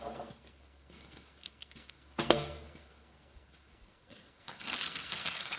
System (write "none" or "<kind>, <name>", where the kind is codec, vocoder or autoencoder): codec, SNAC